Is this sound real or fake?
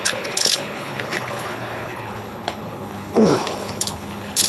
fake